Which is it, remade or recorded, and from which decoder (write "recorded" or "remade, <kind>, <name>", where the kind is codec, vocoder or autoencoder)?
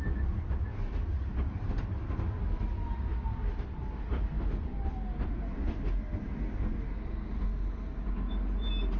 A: recorded